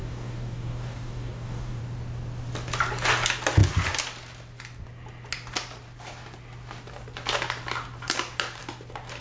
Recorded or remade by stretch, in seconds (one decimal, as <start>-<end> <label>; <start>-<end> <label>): 0.0-1.8 remade; 1.8-9.2 recorded